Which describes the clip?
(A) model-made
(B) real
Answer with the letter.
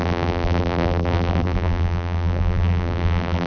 A